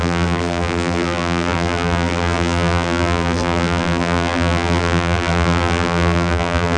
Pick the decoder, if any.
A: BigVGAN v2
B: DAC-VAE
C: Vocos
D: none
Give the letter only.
A